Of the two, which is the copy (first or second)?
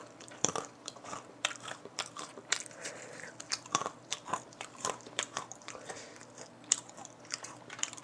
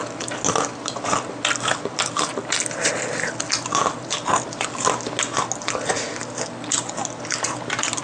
first